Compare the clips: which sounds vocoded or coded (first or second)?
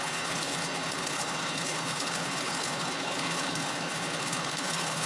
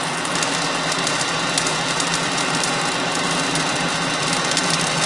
first